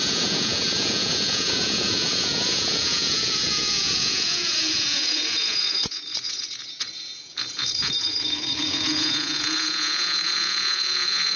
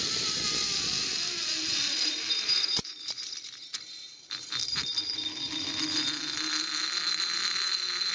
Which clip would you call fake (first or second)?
first